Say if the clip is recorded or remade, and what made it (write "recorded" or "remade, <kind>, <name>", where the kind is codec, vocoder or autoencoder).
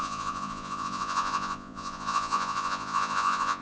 remade, vocoder, Vocos